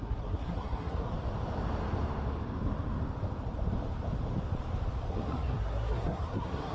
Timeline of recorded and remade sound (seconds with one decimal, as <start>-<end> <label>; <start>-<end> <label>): 0.0-1.1 remade; 1.1-5.1 recorded; 5.1-6.7 remade